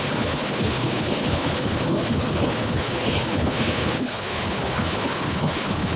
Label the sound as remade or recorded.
remade